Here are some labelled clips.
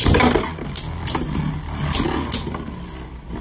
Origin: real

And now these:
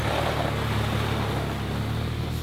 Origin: real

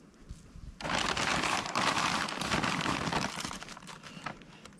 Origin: real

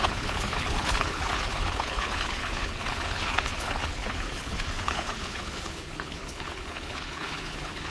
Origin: fake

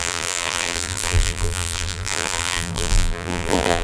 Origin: fake